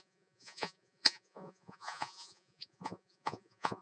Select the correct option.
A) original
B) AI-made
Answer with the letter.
B